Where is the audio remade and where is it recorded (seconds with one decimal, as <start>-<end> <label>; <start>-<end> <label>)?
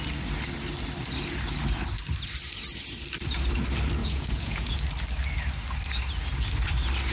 0.0-4.0 recorded; 4.0-4.7 remade; 4.7-7.1 recorded